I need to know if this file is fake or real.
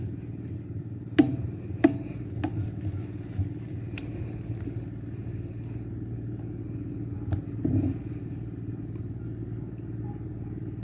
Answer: real